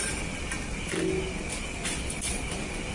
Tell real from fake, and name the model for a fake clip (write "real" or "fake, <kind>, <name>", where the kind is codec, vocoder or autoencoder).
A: real